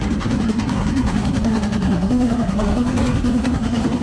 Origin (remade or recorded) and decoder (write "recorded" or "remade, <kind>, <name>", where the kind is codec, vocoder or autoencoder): remade, codec, SNAC